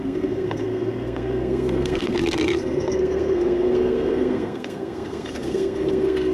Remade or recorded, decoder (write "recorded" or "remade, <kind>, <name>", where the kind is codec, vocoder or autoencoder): remade, codec, SNAC